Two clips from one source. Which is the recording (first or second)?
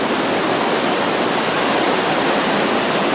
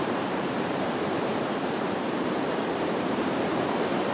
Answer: first